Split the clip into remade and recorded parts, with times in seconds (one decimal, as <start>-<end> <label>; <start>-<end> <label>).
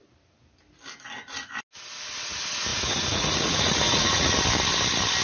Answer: 0.0-2.7 recorded; 2.7-4.4 remade; 4.4-5.2 recorded